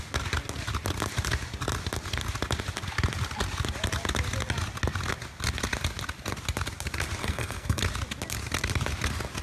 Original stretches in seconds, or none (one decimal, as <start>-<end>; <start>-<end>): 0.0-7.2; 7.8-9.4